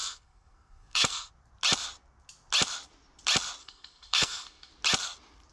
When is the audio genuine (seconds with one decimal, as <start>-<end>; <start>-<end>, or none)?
1.3-3.6; 4.7-5.5